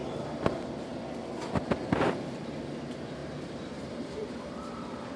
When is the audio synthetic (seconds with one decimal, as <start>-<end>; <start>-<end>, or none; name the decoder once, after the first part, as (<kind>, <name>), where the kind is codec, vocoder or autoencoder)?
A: 0.0-0.5 (vocoder, BigVGAN v2); 3.2-4.3